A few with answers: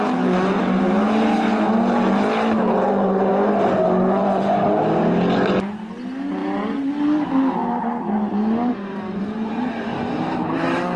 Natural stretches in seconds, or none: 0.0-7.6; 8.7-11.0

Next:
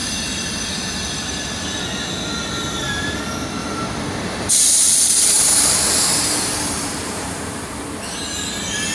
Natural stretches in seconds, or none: 0.0-3.6; 8.5-8.9

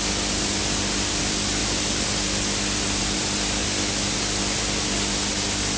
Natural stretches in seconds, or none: 0.6-1.2; 1.6-3.0; 3.6-5.3

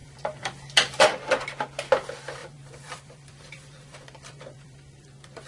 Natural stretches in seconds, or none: 1.0-2.4

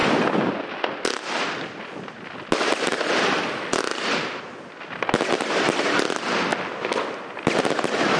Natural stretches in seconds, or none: 0.0-3.9; 4.4-8.2

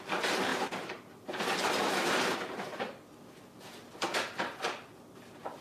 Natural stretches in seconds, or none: 0.0-0.5; 3.9-5.6